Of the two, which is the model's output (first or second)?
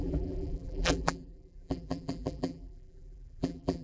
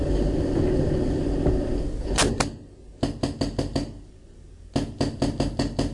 first